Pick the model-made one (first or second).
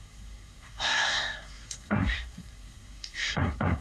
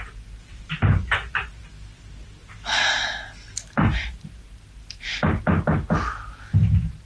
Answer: first